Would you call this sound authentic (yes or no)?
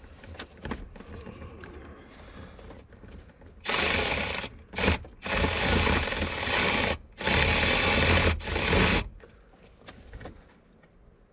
yes